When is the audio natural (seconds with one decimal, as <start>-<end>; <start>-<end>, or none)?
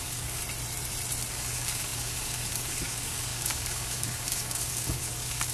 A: 0.4-1.3